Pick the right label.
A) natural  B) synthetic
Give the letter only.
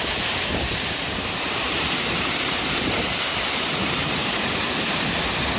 B